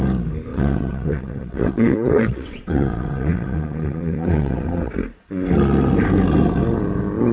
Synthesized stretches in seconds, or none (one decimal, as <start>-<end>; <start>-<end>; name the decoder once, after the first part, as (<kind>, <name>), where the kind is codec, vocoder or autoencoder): 0.5-4.9 (vocoder, WaveNeXt)